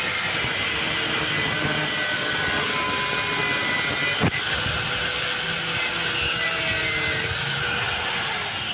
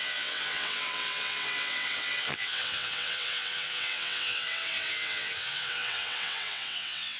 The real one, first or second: first